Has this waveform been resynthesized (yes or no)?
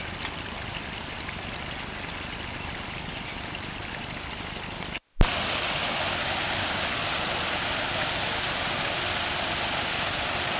no